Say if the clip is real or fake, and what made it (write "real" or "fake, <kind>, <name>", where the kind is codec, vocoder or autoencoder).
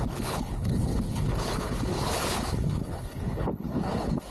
fake, codec, HILCodec